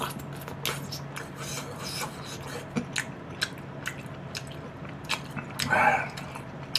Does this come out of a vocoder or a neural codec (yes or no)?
no